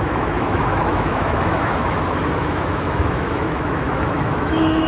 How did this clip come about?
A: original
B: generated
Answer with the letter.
B